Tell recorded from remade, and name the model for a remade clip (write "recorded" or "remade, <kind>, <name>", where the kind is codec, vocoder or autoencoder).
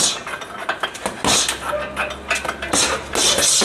recorded